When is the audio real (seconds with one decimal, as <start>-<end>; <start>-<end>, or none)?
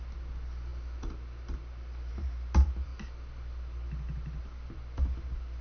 0.0-5.6